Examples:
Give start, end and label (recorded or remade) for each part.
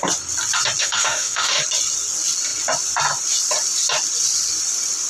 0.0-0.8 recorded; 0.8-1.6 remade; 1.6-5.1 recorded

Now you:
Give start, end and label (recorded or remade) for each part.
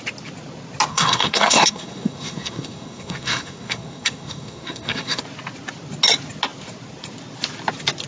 0.0-0.9 recorded; 0.9-5.2 remade; 5.2-8.1 recorded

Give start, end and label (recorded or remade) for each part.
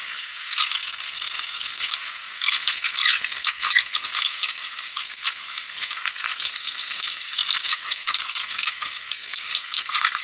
0.0-10.2 remade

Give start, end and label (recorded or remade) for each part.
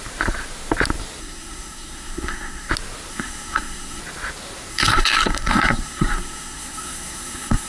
0.0-1.2 recorded; 1.2-2.7 remade; 2.7-3.1 recorded; 3.1-4.0 remade; 4.0-4.7 recorded; 4.7-7.7 remade